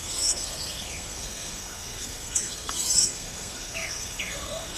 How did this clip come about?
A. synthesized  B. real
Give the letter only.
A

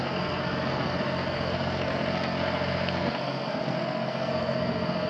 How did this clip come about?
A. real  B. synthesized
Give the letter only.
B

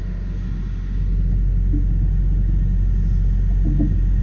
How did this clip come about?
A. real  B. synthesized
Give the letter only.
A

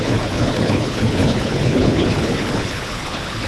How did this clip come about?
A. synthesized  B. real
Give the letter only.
A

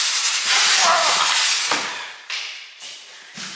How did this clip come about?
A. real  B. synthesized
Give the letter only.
A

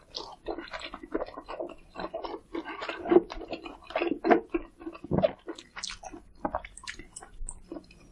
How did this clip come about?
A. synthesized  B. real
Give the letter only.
B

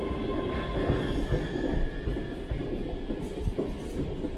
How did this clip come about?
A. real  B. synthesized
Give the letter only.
A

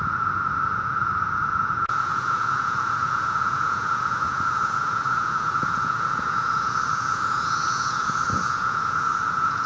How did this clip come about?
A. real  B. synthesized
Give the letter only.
B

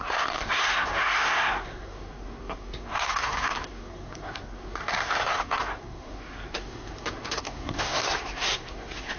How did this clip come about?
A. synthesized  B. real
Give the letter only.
A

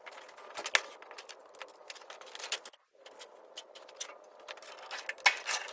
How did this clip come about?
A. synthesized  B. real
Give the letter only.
B